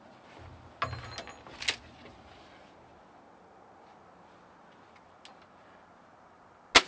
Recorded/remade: recorded